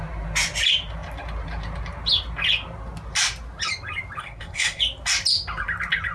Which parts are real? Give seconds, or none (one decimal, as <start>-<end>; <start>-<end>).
0.0-4.2; 4.8-6.1